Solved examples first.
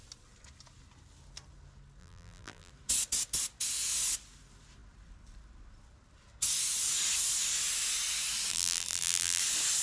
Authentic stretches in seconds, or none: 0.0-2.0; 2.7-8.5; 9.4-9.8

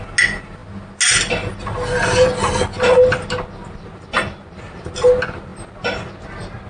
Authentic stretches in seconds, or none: 0.0-6.7

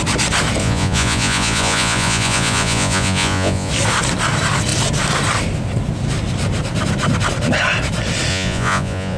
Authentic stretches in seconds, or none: 0.0-0.6; 3.7-8.3